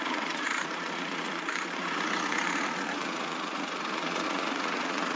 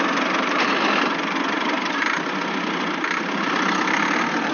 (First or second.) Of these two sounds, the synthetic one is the first